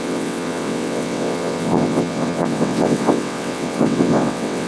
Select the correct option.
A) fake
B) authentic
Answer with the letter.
A